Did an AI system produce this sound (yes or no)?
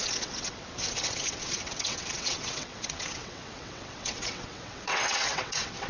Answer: yes